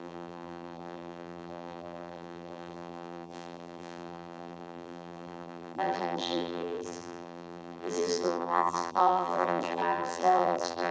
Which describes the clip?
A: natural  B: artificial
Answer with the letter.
B